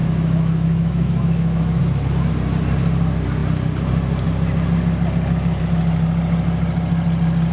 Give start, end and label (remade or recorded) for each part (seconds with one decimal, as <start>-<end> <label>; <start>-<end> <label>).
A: 0.0-1.8 remade; 1.8-7.5 recorded